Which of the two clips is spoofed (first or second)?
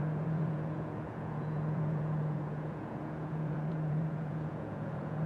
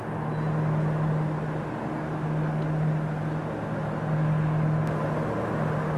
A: first